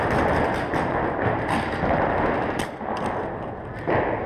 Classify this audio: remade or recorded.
recorded